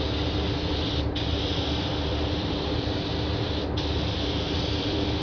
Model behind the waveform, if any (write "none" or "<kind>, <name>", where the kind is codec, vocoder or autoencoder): vocoder, BigVGAN v2